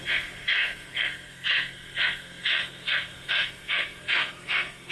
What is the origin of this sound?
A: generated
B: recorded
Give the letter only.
A